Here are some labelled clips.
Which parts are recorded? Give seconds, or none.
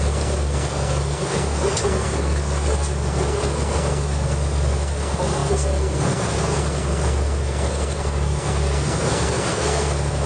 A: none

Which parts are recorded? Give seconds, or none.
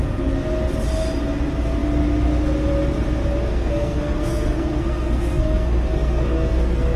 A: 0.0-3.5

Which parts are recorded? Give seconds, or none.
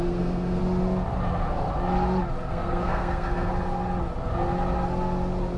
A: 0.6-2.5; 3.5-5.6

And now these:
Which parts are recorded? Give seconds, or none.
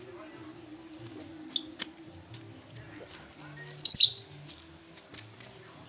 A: 0.0-5.9